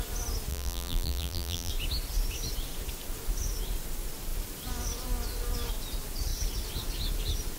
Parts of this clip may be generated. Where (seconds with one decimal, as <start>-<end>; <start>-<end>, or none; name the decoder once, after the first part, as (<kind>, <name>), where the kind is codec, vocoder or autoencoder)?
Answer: 0.5-1.7 (vocoder, BigVGAN v2)

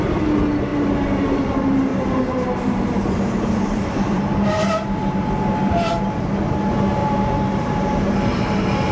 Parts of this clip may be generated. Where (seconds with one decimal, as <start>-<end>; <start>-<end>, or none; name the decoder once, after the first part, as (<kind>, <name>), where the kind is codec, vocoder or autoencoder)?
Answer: 1.9-4.2 (vocoder, BigVGAN v2); 7.0-8.9

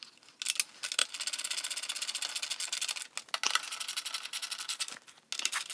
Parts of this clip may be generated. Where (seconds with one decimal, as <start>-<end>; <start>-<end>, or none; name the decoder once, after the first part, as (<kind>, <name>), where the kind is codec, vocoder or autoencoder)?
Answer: none

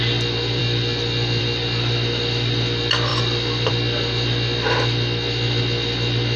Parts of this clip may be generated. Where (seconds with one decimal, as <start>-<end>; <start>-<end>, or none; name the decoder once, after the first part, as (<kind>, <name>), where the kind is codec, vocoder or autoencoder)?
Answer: 3.1-3.7 (vocoder, BigVGAN v2)

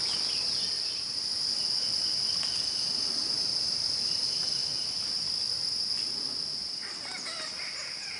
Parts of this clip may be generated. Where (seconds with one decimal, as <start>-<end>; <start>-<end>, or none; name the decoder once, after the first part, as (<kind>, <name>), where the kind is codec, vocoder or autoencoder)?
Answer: none